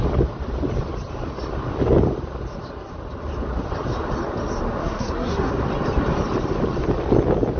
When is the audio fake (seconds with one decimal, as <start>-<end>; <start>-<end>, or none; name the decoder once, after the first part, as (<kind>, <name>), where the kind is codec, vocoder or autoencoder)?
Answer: 4.8-5.5 (codec, SNAC)